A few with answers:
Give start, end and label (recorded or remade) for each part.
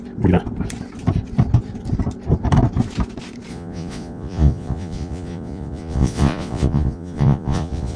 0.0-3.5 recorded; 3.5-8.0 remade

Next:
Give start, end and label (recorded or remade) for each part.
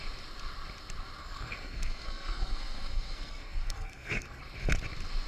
0.0-1.2 recorded; 1.2-4.4 remade; 4.4-5.3 recorded